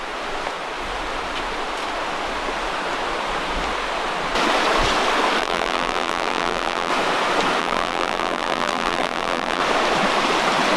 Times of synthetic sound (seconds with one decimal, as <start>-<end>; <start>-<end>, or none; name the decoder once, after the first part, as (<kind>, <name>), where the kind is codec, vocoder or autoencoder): 5.4-6.9 (vocoder, BigVGAN v2); 7.6-9.6